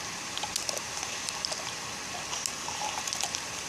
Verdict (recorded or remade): recorded